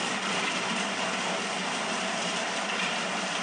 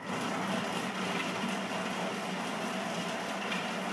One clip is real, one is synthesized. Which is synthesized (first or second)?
first